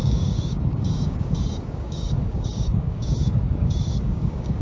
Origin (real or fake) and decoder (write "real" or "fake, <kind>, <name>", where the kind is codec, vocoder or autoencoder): fake, codec, DAC